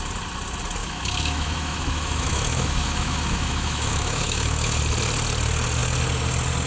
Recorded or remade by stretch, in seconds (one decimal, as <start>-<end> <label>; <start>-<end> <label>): 0.0-0.8 recorded; 0.8-4.8 remade; 4.8-6.7 recorded